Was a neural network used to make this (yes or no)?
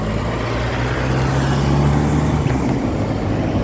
no